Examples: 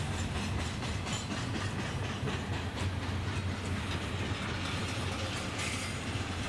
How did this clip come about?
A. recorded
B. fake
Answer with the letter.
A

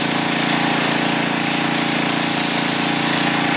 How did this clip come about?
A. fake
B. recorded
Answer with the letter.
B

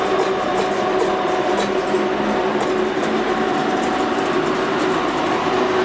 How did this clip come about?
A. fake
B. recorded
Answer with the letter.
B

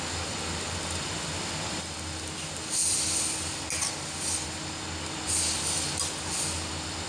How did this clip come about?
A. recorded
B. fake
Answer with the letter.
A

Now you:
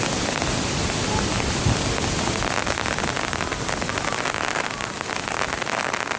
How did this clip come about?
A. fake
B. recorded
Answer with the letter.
B